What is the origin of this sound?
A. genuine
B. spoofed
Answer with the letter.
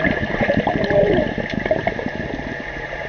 A